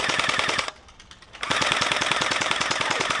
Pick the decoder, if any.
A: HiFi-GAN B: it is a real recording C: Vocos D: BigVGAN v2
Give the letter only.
D